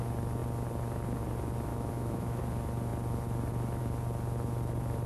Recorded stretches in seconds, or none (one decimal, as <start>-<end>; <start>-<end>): 0.0-1.7; 2.4-5.1